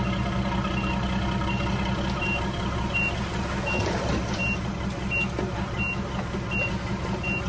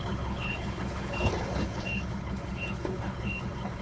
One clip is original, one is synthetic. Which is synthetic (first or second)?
second